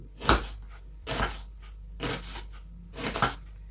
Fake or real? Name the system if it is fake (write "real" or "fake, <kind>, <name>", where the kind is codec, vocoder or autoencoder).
real